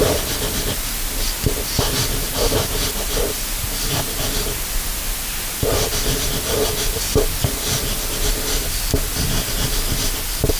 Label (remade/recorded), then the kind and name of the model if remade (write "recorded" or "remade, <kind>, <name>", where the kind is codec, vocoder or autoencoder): recorded